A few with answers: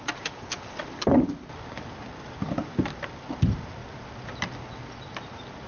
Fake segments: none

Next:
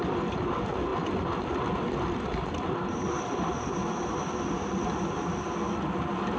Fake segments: none